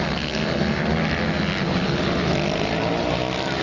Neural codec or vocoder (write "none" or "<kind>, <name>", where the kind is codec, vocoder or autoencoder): none